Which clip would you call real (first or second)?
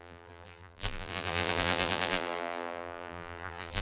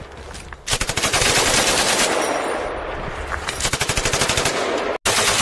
second